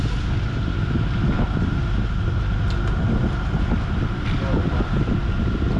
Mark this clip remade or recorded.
recorded